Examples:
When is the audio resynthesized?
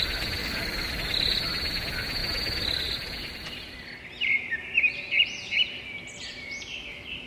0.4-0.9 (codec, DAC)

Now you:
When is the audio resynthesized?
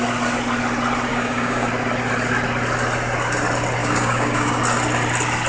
1.1-1.7 (codec, DAC); 3.8-4.6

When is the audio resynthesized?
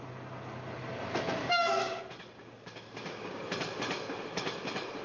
1.4-2.0 (codec, DAC); 2.4-3.4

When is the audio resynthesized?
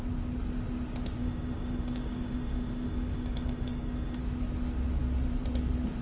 1.2-4.2 (codec, DAC)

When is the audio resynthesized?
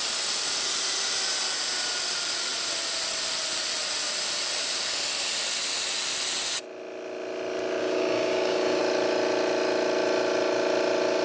7.8-8.8 (codec, DAC)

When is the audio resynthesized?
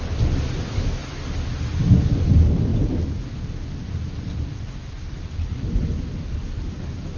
none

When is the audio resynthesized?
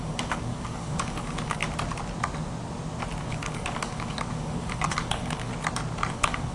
0.0-1.6 (codec, DAC); 3.2-5.5; 6.1-6.5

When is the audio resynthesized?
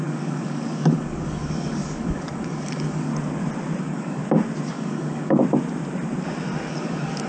0.0-3.1 (codec, DAC); 3.8-4.2; 4.7-5.4; 6.7-7.3